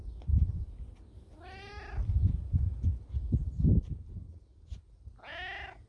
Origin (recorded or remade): recorded